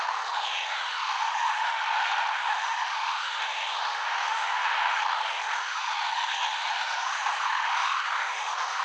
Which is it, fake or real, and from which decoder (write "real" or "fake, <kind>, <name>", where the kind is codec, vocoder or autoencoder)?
fake, autoencoder, DAC-VAE